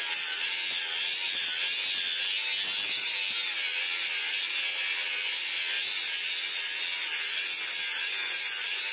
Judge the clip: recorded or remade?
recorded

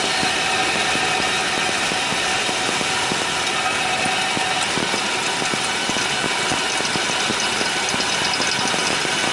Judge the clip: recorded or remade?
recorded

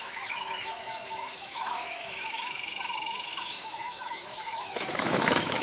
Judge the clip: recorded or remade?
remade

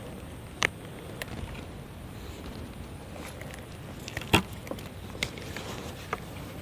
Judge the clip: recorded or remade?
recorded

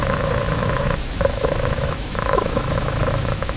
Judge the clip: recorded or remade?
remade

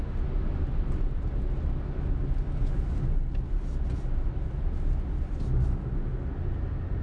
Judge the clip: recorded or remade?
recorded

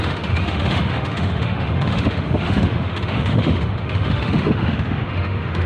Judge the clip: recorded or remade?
remade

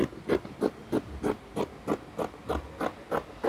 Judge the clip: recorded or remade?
recorded